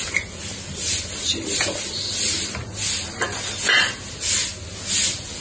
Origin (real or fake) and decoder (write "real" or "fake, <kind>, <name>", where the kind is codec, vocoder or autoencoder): real